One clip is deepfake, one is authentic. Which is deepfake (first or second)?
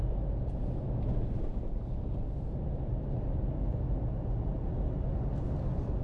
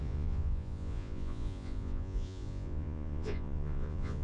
second